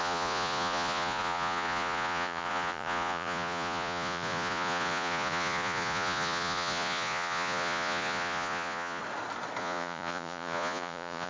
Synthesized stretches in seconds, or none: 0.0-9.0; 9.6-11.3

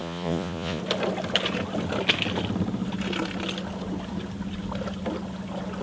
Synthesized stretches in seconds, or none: 0.0-0.8

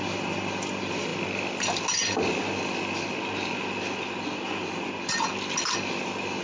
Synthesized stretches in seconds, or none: none

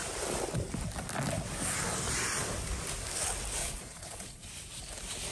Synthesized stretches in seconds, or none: 3.6-4.5

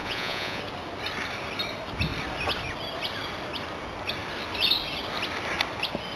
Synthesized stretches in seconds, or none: 0.0-0.6

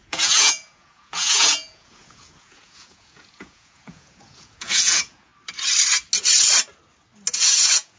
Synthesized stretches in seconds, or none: 0.0-5.3; 7.3-8.0

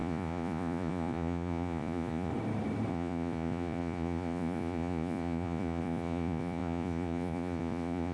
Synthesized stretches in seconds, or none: 0.0-2.3; 2.9-8.1